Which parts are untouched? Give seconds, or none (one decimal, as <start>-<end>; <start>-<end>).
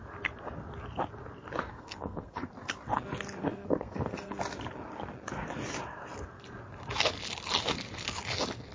0.0-1.7; 2.5-3.4; 4.4-8.7